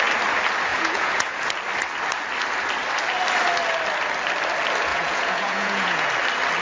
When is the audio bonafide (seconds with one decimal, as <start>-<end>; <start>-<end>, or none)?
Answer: 0.0-0.7; 1.5-4.9; 6.1-6.6

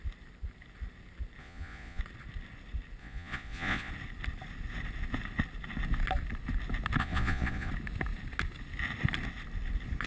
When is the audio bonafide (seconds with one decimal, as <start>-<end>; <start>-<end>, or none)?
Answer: 0.0-1.4; 2.0-3.0; 3.9-7.0; 7.7-10.1

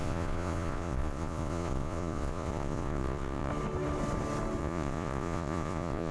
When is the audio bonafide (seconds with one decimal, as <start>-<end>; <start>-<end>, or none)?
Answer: 3.5-4.6